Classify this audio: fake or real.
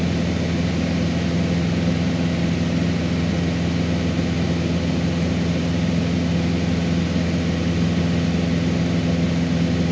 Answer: real